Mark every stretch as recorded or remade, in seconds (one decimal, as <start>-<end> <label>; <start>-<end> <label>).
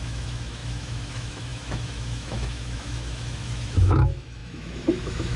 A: 0.0-5.4 remade